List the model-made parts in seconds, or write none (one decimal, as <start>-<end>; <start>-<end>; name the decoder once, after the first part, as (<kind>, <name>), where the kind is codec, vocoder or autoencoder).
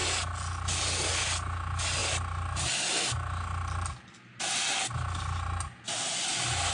none